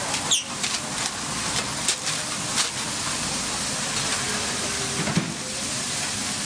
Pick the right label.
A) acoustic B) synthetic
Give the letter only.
A